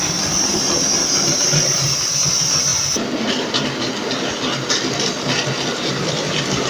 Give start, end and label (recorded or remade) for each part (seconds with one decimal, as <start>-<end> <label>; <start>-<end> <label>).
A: 0.0-6.7 recorded